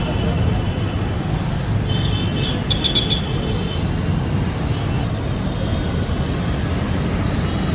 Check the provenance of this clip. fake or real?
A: real